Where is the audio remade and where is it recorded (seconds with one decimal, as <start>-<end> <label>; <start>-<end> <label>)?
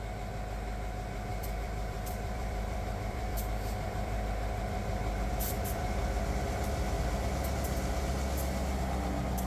0.0-1.3 recorded; 1.3-4.3 remade; 4.3-9.5 recorded